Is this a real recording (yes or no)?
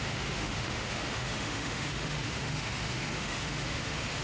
no